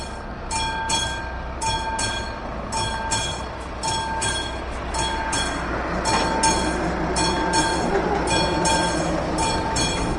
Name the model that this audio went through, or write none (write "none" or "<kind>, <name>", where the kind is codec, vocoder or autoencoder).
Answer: none